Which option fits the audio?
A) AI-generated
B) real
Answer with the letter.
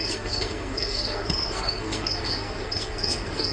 A